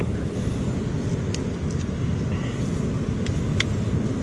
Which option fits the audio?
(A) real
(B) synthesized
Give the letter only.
A